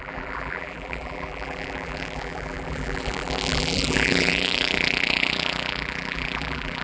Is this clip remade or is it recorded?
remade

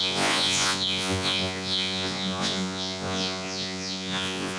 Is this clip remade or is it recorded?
remade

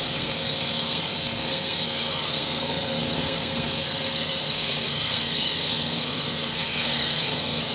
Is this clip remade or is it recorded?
remade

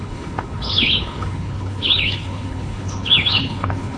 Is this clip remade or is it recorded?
remade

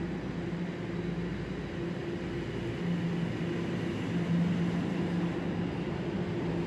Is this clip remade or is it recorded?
recorded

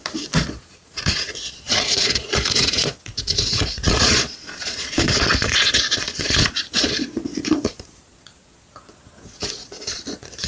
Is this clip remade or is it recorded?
remade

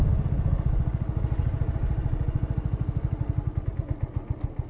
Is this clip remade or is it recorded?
recorded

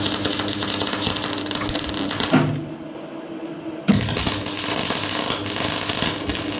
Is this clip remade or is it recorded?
recorded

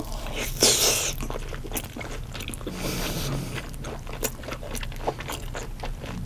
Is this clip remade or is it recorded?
recorded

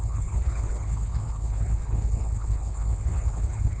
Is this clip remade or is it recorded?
remade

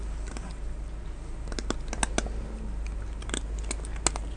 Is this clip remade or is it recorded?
recorded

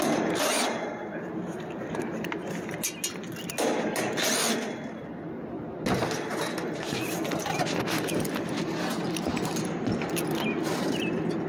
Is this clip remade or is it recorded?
recorded